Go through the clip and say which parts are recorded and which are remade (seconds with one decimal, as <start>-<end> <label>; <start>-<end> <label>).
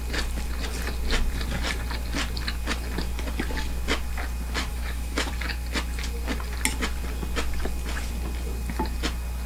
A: 0.0-4.7 recorded; 4.7-5.3 remade; 5.3-9.5 recorded